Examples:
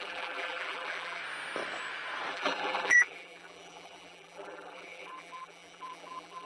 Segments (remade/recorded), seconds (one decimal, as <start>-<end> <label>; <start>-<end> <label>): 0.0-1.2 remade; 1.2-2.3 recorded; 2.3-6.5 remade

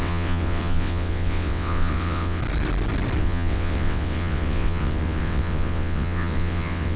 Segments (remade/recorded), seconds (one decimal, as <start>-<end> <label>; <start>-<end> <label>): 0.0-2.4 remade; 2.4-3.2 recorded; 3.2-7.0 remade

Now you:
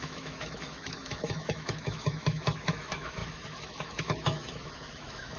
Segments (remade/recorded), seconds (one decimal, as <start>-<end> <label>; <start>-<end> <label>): 0.0-5.4 remade